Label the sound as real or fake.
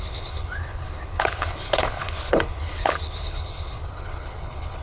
fake